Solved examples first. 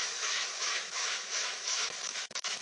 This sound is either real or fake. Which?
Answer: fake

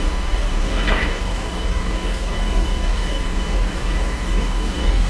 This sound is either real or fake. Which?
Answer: fake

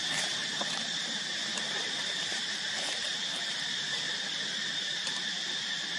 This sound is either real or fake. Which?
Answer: fake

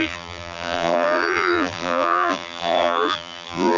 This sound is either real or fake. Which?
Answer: fake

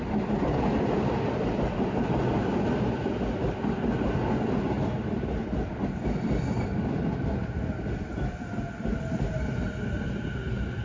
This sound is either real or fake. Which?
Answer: real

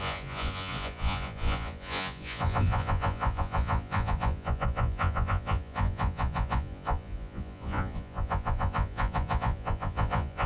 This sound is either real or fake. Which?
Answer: fake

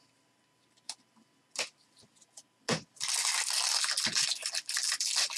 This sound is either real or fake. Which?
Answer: real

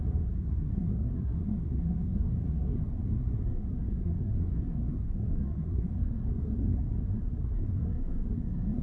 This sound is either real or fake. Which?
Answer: fake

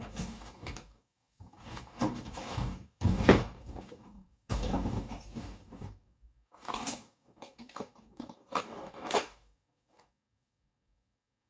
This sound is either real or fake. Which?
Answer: fake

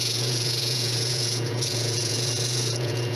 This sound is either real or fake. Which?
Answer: fake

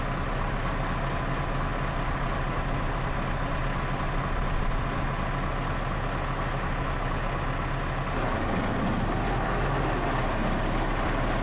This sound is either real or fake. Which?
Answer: real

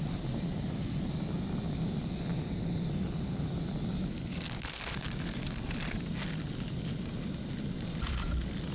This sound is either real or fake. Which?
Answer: real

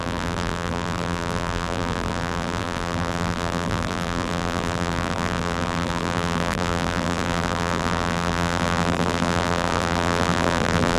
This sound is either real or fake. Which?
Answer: fake